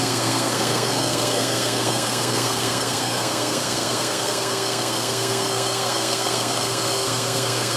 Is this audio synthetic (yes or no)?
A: yes